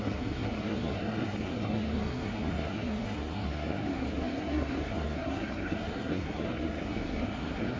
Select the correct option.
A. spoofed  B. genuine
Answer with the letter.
A